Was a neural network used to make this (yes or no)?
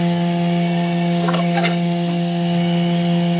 yes